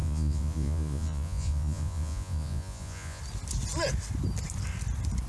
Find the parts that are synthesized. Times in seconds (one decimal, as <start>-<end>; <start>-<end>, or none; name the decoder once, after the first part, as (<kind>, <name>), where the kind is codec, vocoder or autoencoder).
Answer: 0.0-3.2 (vocoder, Vocos)